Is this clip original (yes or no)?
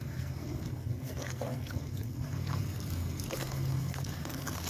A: no